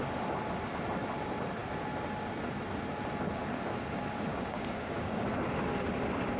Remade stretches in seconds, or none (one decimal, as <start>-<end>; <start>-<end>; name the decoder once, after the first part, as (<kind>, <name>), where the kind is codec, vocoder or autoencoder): 4.3-5.2 (codec, DAC)

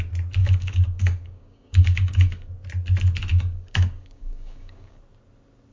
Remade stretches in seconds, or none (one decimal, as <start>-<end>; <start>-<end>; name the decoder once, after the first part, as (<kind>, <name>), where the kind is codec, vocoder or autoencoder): 0.4-2.5 (codec, DAC); 3.3-5.0

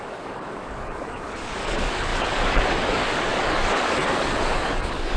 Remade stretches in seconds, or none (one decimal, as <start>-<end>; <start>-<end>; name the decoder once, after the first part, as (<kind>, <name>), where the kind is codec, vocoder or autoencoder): 0.0-5.2 (codec, DAC)